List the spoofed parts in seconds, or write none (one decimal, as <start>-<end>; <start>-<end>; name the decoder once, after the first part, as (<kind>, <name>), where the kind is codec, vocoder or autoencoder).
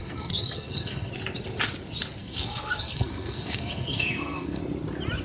0.0-1.1 (codec, SNAC); 2.2-4.6